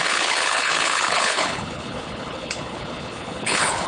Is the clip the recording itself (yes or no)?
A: no